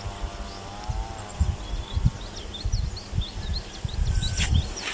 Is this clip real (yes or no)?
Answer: yes